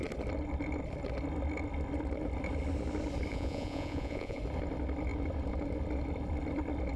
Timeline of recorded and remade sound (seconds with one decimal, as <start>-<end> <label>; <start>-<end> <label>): 0.0-3.3 recorded; 3.3-4.4 remade; 4.4-7.0 recorded